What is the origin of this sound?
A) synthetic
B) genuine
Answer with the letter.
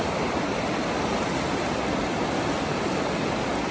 B